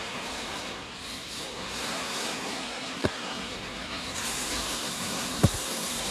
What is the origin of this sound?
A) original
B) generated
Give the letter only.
B